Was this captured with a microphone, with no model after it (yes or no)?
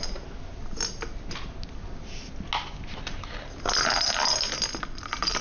yes